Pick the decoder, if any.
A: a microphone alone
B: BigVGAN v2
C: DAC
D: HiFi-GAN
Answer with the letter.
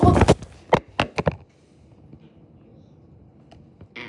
A